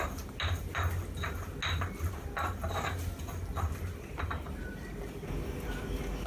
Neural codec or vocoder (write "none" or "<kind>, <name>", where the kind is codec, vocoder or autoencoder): none